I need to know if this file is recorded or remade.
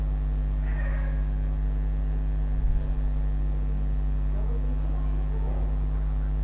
recorded